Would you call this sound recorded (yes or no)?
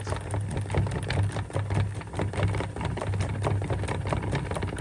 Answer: yes